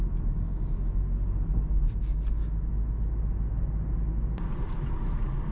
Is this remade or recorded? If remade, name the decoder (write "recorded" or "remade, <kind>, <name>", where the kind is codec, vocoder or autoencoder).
recorded